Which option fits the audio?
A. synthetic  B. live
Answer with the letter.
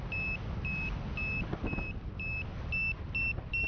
B